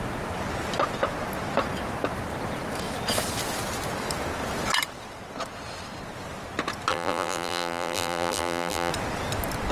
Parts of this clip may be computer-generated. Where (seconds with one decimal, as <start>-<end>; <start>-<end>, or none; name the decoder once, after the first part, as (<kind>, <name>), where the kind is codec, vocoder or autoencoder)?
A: 6.9-8.9 (vocoder, BigVGAN v2)